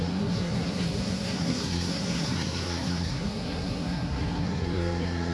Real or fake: fake